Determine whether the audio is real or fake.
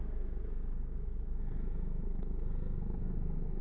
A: fake